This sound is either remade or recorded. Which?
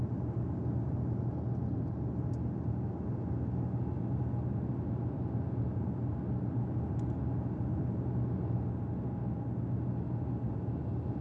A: recorded